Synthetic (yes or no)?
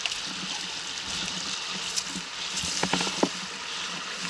no